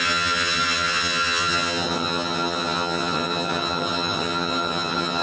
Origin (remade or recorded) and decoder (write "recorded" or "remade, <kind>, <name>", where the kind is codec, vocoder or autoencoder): remade, vocoder, HiFi-GAN